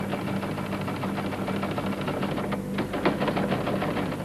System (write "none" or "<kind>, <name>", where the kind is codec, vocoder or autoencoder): none